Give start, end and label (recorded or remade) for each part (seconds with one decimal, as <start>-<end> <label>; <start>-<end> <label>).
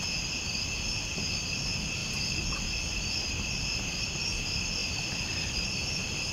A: 0.0-6.3 recorded